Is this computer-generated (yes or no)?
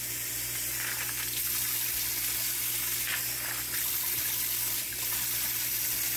no